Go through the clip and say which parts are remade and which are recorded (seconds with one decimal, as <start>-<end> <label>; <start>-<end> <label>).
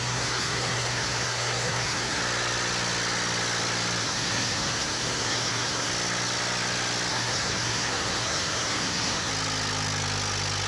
0.0-2.2 remade; 2.2-4.0 recorded; 4.0-5.9 remade; 5.9-7.1 recorded; 7.1-9.3 remade; 9.3-10.7 recorded